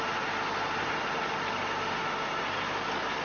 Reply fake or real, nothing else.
real